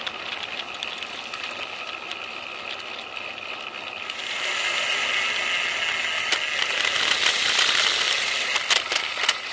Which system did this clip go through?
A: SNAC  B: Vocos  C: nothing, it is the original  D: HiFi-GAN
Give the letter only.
C